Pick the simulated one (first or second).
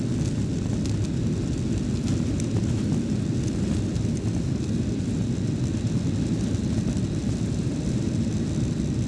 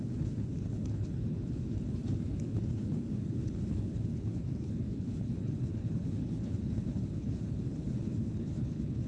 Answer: second